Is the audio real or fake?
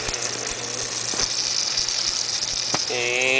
real